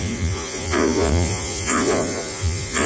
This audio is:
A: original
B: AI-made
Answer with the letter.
B